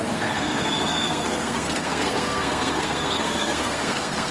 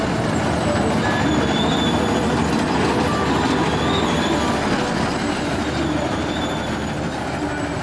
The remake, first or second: first